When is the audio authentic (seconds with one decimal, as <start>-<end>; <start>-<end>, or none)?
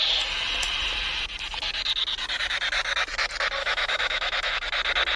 0.0-3.6; 4.5-5.2